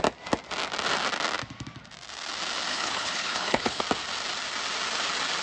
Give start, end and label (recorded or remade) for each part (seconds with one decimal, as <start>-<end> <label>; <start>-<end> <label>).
0.0-2.7 recorded; 2.7-3.8 remade; 3.8-5.4 recorded